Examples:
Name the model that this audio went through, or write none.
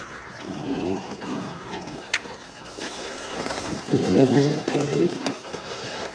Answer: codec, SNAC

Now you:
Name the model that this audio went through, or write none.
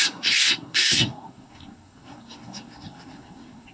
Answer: codec, SNAC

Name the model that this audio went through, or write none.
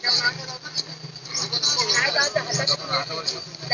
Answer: none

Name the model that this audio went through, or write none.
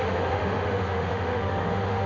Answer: autoencoder, DAC-VAE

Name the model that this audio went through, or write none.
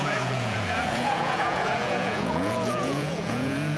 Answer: vocoder, Vocos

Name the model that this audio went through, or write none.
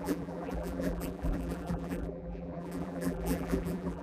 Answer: vocoder, BigVGAN v2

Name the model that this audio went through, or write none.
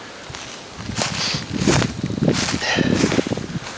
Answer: none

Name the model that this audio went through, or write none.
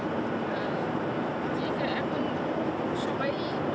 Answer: none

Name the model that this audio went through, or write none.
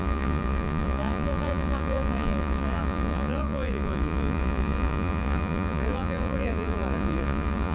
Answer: vocoder, Vocos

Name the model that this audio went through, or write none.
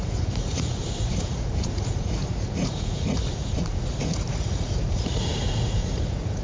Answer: vocoder, Vocos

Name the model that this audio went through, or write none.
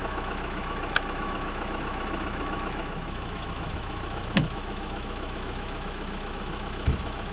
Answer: autoencoder, DAC-VAE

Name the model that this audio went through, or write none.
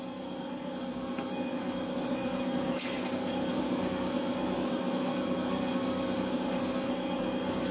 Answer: codec, SNAC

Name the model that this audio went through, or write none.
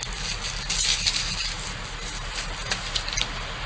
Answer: none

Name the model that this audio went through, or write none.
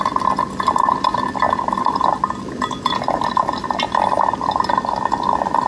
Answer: none